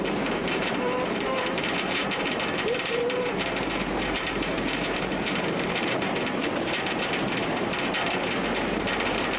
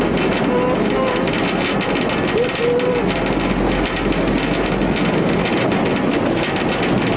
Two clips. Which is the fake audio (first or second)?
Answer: first